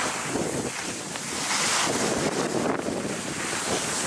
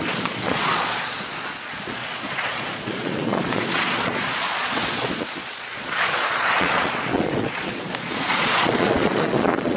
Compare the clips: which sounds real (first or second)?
first